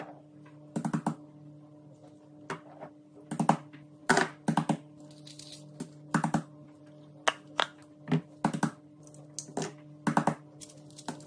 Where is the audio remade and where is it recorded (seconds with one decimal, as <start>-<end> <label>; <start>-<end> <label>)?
0.0-11.3 recorded